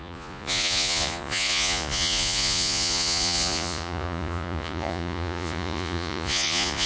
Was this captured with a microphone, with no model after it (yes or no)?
no